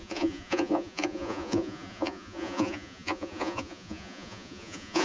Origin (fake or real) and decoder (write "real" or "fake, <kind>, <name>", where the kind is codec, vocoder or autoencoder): fake, vocoder, Vocos